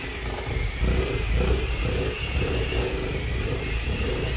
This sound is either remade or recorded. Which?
remade